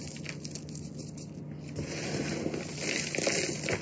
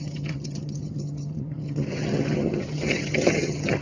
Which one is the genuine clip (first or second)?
first